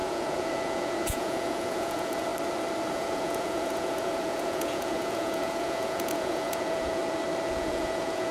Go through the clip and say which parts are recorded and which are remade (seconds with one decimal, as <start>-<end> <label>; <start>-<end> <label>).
0.0-2.3 remade; 2.3-2.9 recorded; 2.9-7.0 remade; 7.0-7.5 recorded; 7.5-8.3 remade